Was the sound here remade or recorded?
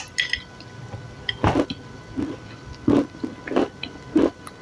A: recorded